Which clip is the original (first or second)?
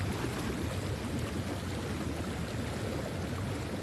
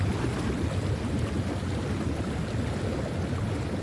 first